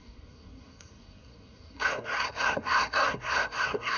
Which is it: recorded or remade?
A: remade